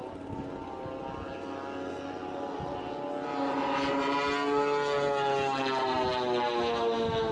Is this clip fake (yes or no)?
no